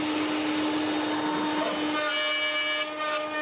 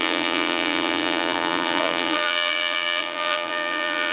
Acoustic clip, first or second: first